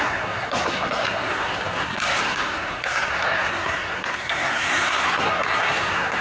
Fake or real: fake